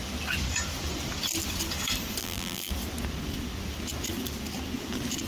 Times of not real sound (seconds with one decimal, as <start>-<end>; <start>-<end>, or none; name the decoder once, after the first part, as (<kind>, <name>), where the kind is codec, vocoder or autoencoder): 2.2-2.7 (vocoder, BigVGAN v2)